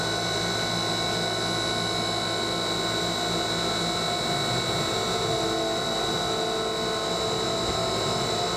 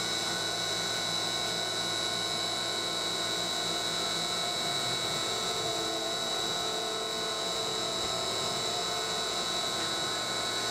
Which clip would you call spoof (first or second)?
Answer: second